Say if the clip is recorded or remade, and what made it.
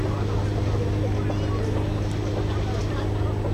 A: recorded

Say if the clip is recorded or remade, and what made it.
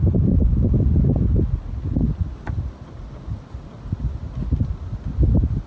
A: recorded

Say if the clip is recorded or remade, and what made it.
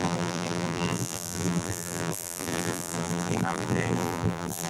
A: remade, vocoder, BigVGAN v2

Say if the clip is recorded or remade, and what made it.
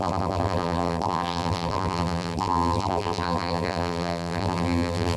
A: remade, vocoder, BigVGAN v2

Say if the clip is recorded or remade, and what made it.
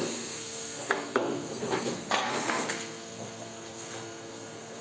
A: remade, codec, SNAC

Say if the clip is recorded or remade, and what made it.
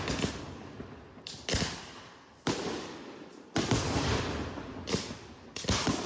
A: recorded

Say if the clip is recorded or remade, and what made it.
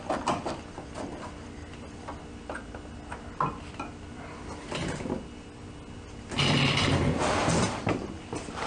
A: recorded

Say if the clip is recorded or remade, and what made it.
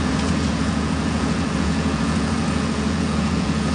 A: remade, vocoder, Vocos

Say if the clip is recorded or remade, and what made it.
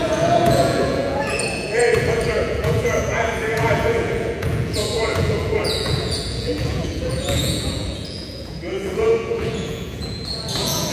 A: remade, vocoder, Vocos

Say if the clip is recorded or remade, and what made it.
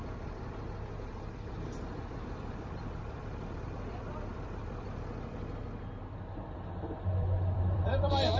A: remade, vocoder, BigVGAN v2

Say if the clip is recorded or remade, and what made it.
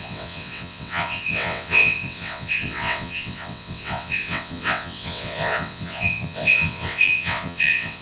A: remade, vocoder, WaveNeXt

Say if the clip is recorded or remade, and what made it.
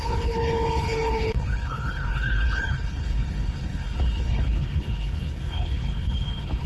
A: remade, codec, HILCodec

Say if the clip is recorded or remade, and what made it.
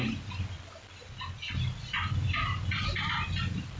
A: recorded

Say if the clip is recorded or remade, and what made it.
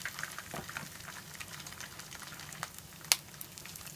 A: recorded